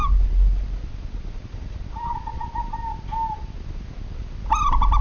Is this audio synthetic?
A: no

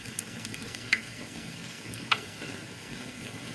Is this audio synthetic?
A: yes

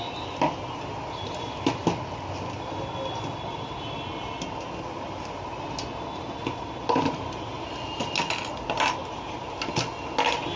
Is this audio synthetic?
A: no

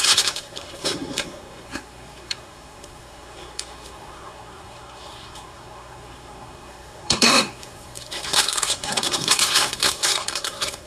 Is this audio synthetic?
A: yes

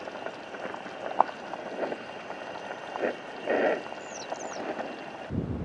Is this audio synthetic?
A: no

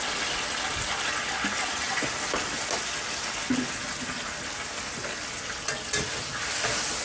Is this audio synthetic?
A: no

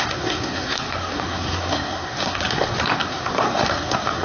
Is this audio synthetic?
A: yes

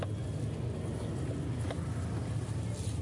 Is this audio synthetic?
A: no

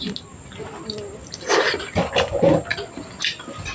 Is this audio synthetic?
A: no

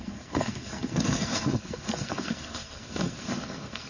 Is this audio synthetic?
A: yes